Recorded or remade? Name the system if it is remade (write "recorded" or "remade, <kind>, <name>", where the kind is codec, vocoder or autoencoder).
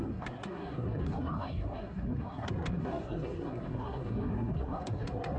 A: remade, codec, SNAC